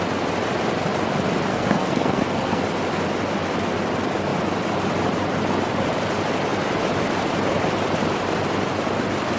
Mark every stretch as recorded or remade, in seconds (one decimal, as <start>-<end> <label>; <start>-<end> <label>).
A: 0.0-1.5 recorded; 1.5-2.6 remade; 2.6-9.4 recorded